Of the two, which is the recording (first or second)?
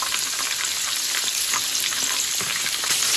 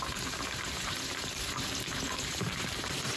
first